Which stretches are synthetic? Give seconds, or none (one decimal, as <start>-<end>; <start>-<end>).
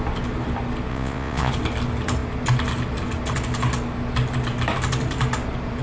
0.9-1.5